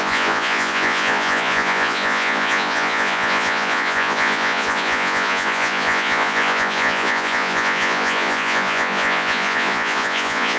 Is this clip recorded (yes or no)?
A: no